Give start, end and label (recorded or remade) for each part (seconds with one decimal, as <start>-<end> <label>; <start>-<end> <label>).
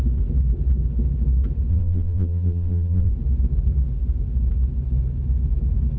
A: 0.0-1.7 recorded; 1.7-3.1 remade; 3.1-6.0 recorded